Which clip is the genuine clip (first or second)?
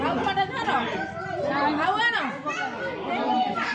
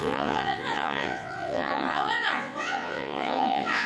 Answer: first